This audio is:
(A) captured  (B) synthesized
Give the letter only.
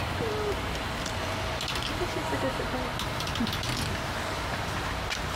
A